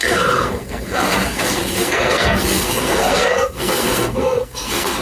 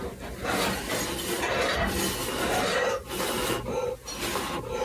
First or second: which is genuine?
second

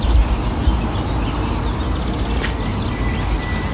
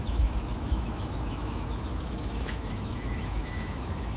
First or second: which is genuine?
first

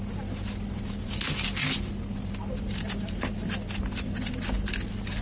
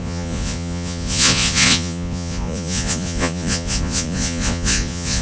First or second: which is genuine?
first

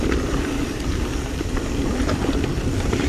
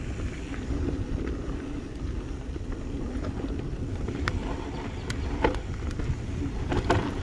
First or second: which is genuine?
second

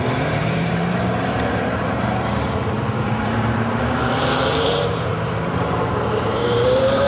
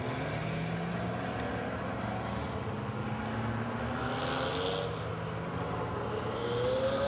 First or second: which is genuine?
second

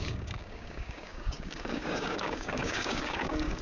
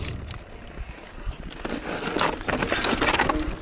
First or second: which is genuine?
second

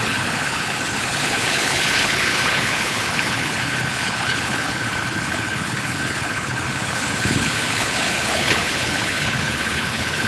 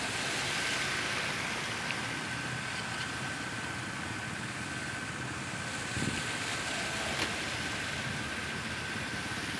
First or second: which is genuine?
second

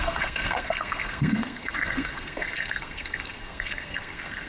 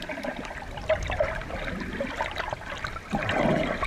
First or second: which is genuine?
second